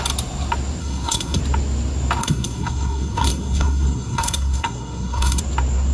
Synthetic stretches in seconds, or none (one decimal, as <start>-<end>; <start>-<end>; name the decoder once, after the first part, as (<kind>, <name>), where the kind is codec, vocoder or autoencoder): 0.8-1.4 (codec, SNAC); 2.2-5.4